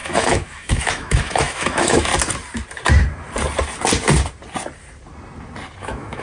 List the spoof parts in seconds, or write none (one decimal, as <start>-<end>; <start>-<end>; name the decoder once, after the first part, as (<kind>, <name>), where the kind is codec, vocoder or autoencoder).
0.0-2.1 (autoencoder, DAC-VAE); 5.8-6.2